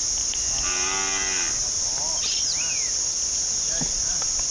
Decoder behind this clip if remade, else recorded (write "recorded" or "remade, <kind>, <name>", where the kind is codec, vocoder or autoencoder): recorded